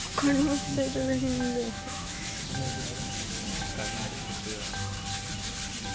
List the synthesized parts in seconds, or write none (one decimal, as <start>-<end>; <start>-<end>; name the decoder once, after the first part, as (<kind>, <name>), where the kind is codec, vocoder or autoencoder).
0.4-2.4 (autoencoder, DAC-VAE); 3.8-4.4